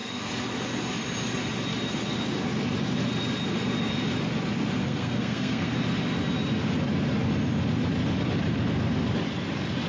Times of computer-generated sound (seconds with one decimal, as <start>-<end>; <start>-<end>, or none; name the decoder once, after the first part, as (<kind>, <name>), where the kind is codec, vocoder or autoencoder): 4.8-5.7 (codec, SNAC)